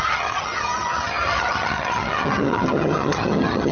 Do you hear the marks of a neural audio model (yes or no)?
yes